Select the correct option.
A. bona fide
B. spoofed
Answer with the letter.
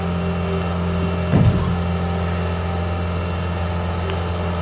A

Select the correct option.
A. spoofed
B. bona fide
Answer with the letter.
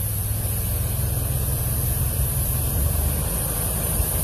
A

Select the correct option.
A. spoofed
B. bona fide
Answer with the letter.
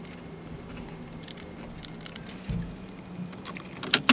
B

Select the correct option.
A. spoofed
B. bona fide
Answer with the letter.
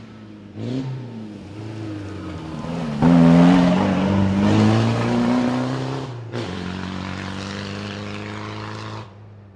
B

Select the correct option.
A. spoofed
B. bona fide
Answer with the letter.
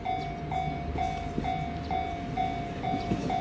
B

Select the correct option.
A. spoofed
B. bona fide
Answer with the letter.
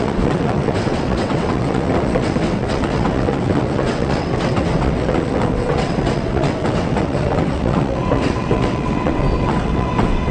A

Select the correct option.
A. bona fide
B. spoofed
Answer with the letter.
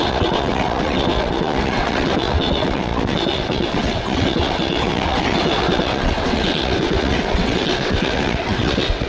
B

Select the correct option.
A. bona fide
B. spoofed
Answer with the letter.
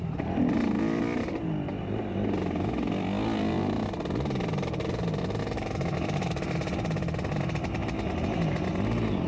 A